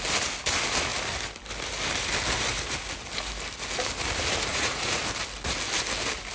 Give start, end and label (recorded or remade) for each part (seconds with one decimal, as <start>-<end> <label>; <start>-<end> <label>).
0.0-4.5 recorded; 4.5-5.0 remade; 5.0-6.3 recorded